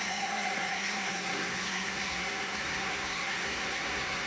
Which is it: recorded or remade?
remade